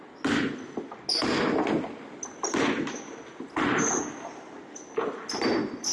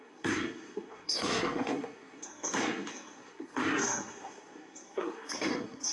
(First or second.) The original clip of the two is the first